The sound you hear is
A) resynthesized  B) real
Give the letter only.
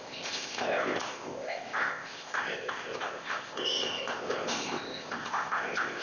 A